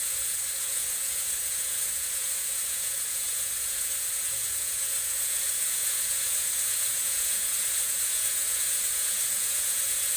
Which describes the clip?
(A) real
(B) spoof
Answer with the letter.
B